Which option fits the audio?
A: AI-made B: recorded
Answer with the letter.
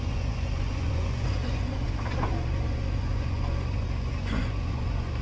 A